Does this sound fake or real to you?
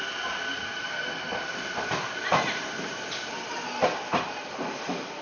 real